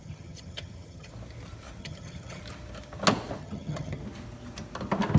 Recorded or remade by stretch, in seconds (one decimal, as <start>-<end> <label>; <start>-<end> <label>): 0.0-1.1 remade; 1.1-1.8 recorded; 1.8-2.4 remade; 2.4-3.4 recorded; 3.4-4.0 remade; 4.0-5.2 recorded